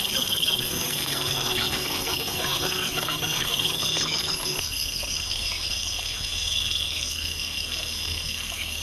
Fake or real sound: fake